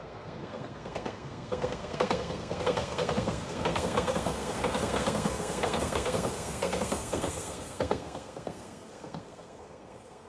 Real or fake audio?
fake